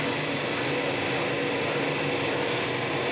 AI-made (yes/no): no